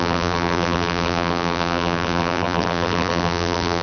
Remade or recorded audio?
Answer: remade